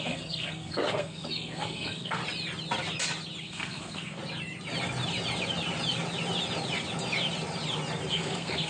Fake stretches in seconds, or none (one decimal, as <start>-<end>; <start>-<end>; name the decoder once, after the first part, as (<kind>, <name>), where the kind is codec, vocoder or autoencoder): 0.0-2.2 (codec, SNAC); 3.4-4.2; 8.1-8.7